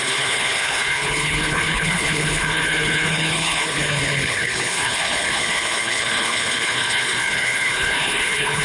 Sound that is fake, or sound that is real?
fake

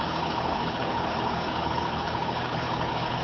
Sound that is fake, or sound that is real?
fake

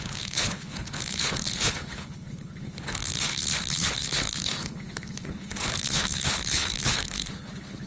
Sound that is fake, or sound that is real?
fake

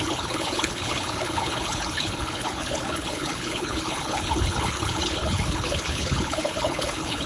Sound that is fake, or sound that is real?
fake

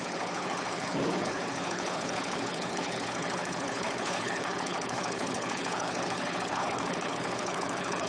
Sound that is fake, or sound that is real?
fake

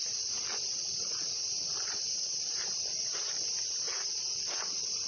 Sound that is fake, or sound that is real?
real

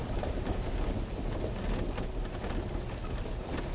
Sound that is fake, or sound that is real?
real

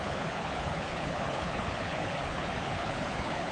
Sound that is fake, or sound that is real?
fake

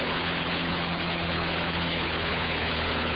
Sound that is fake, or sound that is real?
fake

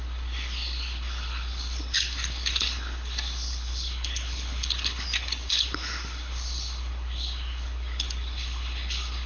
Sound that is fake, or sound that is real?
fake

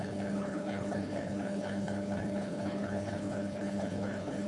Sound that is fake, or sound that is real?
fake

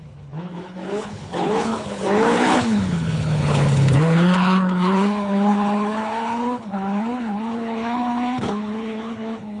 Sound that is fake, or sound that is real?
fake